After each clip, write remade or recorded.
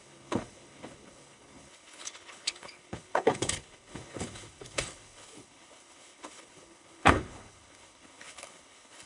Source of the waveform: remade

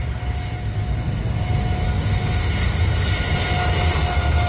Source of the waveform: recorded